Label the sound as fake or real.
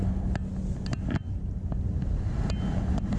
real